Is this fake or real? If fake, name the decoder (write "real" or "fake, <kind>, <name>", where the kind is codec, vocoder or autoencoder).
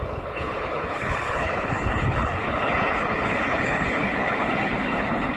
fake, codec, HILCodec